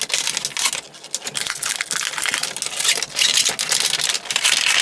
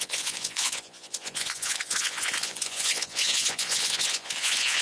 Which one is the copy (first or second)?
second